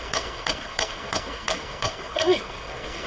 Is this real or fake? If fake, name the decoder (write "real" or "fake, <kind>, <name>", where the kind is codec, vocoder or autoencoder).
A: fake, codec, SNAC